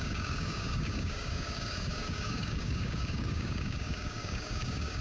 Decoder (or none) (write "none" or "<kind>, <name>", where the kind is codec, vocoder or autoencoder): codec, DAC